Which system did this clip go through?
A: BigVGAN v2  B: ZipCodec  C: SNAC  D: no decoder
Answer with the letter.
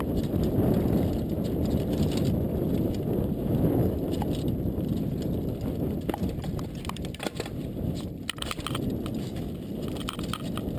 A